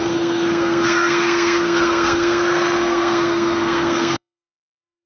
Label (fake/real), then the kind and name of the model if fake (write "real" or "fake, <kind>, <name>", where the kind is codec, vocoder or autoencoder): fake, codec, SNAC